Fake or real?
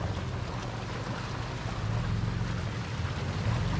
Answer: real